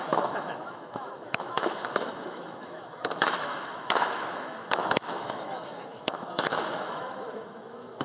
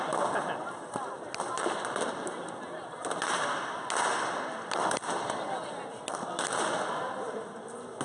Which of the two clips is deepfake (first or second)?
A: first